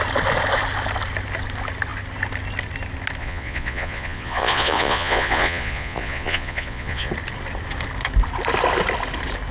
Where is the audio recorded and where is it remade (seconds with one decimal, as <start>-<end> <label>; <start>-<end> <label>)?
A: 0.0-3.2 recorded; 3.2-7.1 remade; 7.1-9.5 recorded